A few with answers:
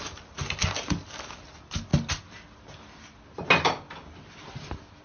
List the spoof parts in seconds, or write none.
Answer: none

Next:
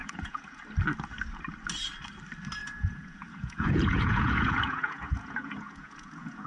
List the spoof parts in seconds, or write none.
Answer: 0.0-0.6; 2.6-6.5

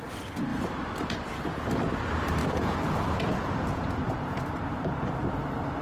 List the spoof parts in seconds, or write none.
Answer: 2.4-4.4

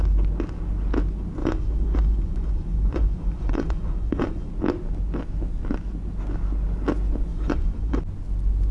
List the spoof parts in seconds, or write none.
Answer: 1.4-4.5; 7.3-8.0

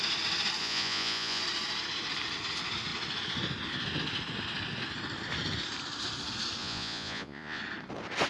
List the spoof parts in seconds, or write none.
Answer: 0.6-1.4; 6.6-7.6

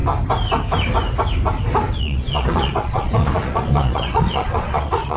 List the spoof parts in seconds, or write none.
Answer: 2.0-5.2

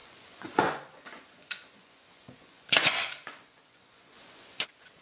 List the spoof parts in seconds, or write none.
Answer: 0.0-5.0